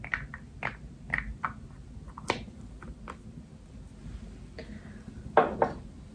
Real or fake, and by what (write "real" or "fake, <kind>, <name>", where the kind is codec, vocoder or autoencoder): real